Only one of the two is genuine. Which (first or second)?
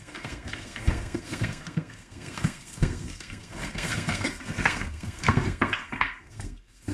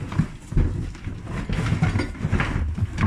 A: second